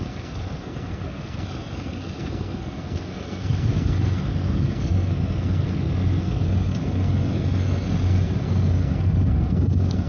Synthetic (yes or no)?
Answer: yes